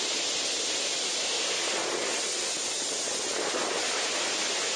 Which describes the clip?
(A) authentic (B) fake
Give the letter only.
A